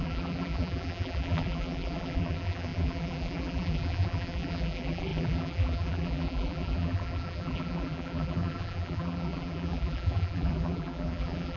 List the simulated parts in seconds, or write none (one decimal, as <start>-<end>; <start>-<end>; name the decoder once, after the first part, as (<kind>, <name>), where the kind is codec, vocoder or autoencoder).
0.0-11.6 (vocoder, BigVGAN v2)